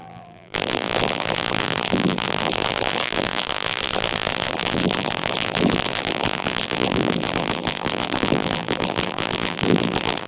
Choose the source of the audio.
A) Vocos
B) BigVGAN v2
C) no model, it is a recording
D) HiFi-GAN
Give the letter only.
B